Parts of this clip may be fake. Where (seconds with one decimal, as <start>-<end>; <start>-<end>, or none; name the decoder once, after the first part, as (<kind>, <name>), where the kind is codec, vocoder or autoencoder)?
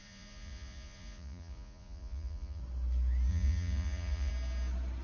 0.0-2.6 (vocoder, Vocos); 3.3-4.3